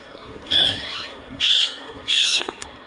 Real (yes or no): no